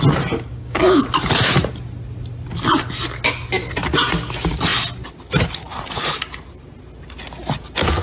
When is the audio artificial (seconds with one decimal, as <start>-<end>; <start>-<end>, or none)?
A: 0.5-1.0